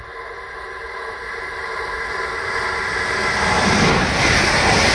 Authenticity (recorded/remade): recorded